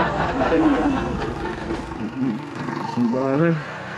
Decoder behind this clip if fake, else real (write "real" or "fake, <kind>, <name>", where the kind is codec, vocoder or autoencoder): fake, codec, SNAC